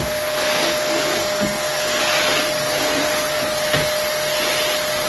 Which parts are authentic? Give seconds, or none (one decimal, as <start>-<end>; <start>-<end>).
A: 2.0-2.8; 3.5-5.1